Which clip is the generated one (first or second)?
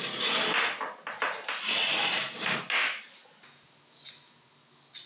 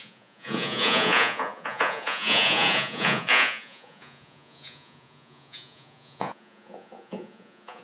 second